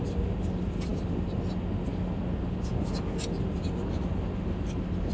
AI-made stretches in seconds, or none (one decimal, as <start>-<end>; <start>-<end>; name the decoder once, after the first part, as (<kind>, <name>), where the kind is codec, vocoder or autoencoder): none